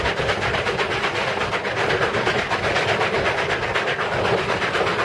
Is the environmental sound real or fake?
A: real